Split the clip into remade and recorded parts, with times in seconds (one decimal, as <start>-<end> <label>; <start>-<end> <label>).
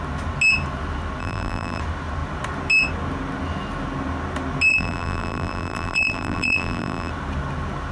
0.0-1.2 recorded; 1.2-1.8 remade; 1.8-4.7 recorded; 4.7-7.1 remade; 7.1-7.9 recorded